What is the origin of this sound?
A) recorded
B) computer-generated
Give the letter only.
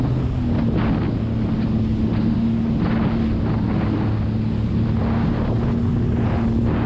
A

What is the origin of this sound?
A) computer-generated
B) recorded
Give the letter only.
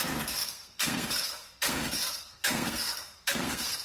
A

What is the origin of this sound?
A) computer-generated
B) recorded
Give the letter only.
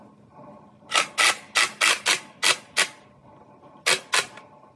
B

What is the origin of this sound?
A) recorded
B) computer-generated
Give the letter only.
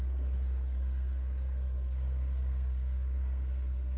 B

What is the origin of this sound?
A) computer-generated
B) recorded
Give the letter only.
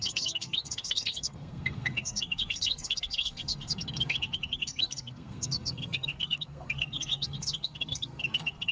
A